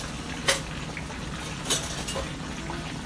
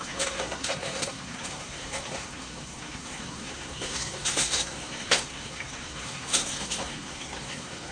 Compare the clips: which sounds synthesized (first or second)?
second